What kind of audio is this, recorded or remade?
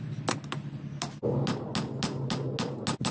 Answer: recorded